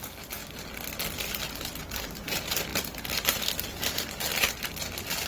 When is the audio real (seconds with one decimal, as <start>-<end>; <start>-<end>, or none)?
0.4-1.8